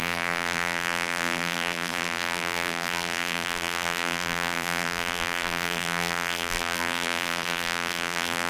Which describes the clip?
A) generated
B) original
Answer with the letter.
A